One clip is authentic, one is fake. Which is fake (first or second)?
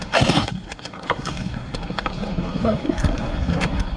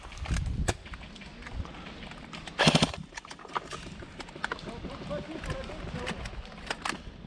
first